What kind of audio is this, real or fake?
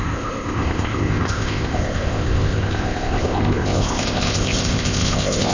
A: fake